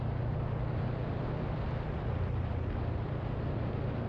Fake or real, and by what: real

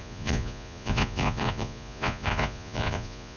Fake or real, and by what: fake, vocoder, Vocos